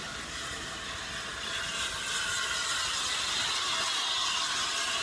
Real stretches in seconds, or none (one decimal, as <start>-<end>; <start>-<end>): 0.0-5.0